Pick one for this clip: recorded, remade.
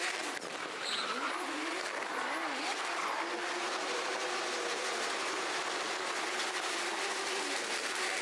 recorded